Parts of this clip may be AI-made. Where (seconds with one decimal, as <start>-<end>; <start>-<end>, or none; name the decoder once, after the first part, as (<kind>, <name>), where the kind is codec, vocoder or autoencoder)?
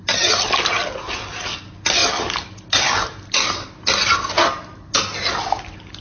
none